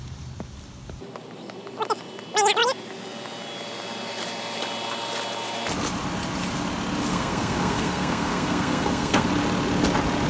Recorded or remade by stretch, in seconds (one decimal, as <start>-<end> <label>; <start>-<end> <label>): 0.0-7.1 recorded; 7.1-9.3 remade; 9.3-10.3 recorded

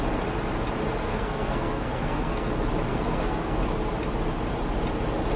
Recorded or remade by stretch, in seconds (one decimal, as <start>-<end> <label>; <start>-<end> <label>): 0.0-1.0 recorded; 1.0-2.5 remade; 2.5-2.9 recorded; 2.9-3.6 remade; 3.6-5.4 recorded

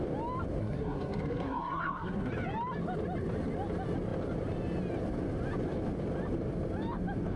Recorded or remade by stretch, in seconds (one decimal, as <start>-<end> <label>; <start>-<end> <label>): 0.0-0.6 recorded; 0.6-2.3 remade; 2.3-7.4 recorded

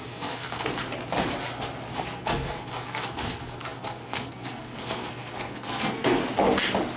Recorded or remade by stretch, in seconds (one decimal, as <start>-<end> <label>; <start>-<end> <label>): 0.0-0.8 remade; 0.8-1.9 recorded; 1.9-6.2 remade; 6.2-7.0 recorded

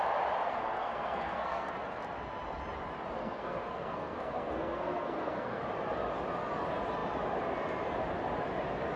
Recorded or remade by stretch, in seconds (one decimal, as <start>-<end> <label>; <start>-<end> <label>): 0.0-0.5 recorded; 0.5-1.7 remade; 1.7-3.2 recorded; 3.2-5.6 remade; 5.6-9.0 recorded

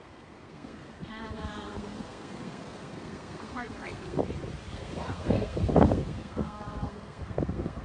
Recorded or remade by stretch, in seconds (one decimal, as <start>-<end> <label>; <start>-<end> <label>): 0.0-4.2 remade; 4.2-4.7 recorded; 4.7-7.8 remade

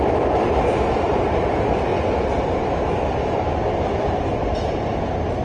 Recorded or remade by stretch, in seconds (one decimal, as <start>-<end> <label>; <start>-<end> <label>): 0.0-5.4 recorded